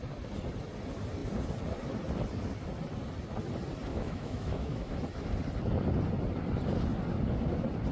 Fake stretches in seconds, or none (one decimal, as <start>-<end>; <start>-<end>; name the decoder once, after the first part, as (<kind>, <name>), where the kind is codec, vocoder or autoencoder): 3.9-4.9 (autoencoder, DAC-VAE)